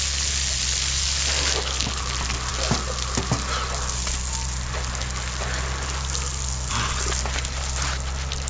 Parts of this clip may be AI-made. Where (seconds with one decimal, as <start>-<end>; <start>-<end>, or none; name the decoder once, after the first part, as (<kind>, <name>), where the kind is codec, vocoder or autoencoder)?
none